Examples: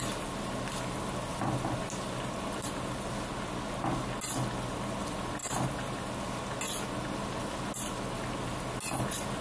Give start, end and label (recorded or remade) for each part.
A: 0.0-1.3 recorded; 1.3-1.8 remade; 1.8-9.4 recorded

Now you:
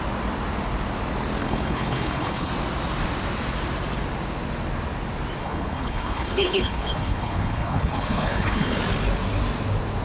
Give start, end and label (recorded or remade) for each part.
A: 0.0-1.4 recorded; 1.4-2.5 remade; 2.5-5.4 recorded; 5.4-8.8 remade; 8.8-10.0 recorded

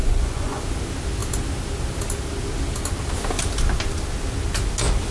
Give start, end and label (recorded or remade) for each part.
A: 0.0-0.6 remade; 0.6-5.1 recorded

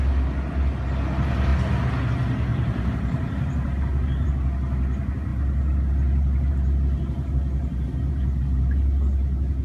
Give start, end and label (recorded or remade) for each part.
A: 0.0-2.5 recorded; 2.5-4.3 remade; 4.3-9.6 recorded

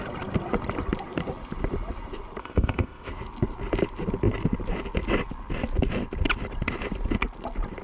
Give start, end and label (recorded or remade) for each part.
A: 0.0-2.4 recorded; 2.4-3.1 remade; 3.1-7.8 recorded

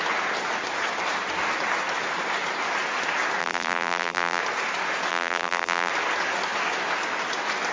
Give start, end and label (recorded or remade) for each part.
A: 0.0-3.4 recorded; 3.4-4.4 remade; 4.4-5.1 recorded; 5.1-5.9 remade; 5.9-7.7 recorded